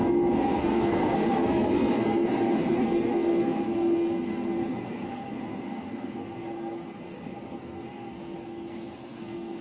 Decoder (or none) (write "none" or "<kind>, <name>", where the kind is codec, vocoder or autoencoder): codec, SNAC